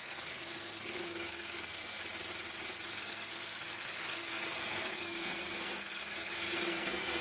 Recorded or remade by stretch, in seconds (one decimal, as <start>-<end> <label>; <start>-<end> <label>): 0.0-2.0 remade; 2.0-2.9 recorded; 2.9-7.2 remade